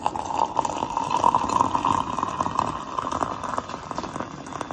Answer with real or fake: real